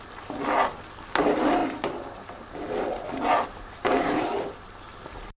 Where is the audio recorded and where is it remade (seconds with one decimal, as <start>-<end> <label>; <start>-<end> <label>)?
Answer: 0.0-5.4 recorded